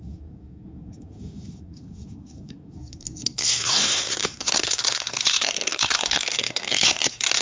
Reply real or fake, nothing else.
fake